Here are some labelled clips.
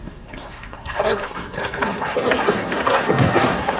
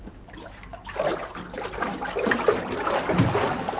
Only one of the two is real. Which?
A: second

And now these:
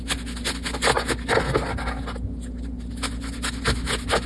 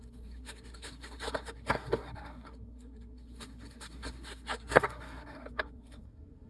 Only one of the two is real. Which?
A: first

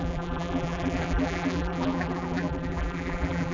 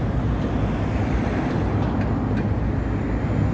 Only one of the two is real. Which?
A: second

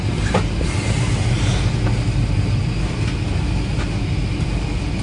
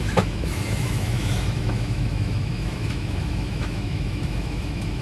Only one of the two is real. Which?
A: first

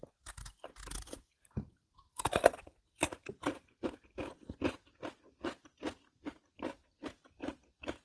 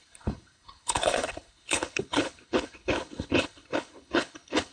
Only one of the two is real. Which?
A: first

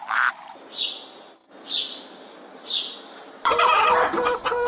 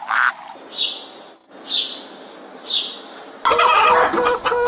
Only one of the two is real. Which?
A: second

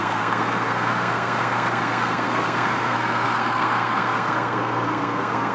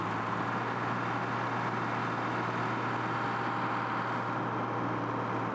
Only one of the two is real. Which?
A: second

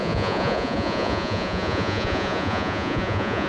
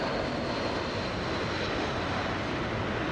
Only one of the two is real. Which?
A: second